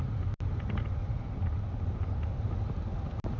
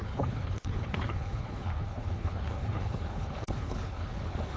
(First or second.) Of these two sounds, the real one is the first